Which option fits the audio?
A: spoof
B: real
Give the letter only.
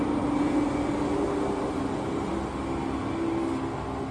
B